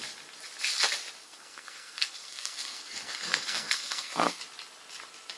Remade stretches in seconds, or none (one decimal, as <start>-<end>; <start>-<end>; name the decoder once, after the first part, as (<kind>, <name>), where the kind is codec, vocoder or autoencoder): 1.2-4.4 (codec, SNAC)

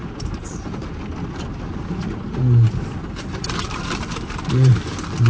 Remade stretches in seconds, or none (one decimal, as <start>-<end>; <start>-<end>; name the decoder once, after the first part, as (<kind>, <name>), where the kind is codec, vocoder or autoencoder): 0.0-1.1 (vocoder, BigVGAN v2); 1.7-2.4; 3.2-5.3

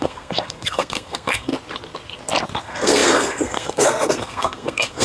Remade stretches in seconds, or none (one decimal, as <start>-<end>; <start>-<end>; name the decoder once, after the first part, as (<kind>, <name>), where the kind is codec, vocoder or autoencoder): 0.0-1.5 (codec, SNAC); 2.6-5.0

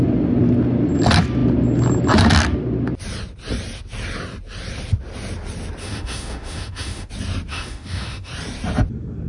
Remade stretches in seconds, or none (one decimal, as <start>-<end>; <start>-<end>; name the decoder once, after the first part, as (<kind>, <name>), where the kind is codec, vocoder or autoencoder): 5.8-7.1 (autoencoder, DAC-VAE); 7.5-8.3

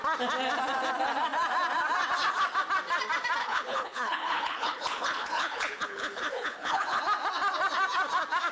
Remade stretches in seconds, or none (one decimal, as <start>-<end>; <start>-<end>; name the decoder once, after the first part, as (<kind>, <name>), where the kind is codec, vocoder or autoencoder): 3.4-7.0 (codec, HILCodec)

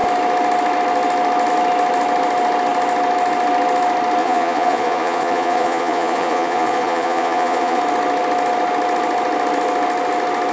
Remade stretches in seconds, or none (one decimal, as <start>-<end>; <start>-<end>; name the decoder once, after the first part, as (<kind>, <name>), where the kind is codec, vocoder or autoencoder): 4.2-7.8 (vocoder, Vocos)

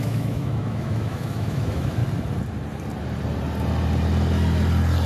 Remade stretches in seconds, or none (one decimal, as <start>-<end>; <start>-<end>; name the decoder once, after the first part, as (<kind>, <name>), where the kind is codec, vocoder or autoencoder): 0.0-2.0 (autoencoder, DAC-VAE)